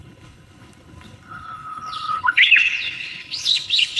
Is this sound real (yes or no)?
no